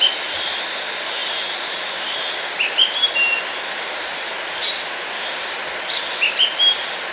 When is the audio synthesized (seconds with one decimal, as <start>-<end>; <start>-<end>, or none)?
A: none